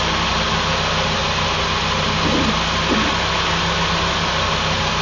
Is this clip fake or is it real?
real